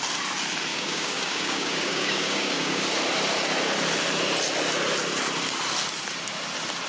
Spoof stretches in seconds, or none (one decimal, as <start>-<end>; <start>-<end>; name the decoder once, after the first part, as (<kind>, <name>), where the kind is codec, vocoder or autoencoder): 0.7-2.8 (codec, DAC)